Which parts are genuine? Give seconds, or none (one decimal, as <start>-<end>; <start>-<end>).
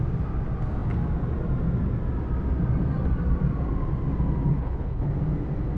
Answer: 0.0-4.5; 5.1-5.8